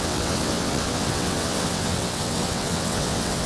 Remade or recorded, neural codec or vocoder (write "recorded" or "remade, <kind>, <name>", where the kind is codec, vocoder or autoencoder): remade, vocoder, WaveNeXt